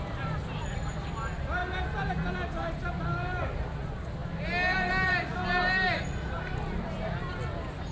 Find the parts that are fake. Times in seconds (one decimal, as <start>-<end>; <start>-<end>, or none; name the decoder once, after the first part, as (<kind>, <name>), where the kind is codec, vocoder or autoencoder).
none